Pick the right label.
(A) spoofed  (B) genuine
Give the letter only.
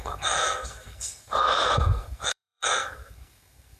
A